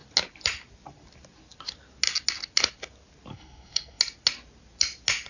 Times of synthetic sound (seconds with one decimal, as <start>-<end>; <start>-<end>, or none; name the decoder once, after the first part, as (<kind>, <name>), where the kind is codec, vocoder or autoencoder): 3.3-4.0 (codec, SNAC)